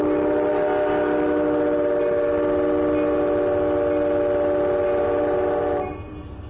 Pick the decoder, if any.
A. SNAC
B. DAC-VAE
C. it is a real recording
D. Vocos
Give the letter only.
C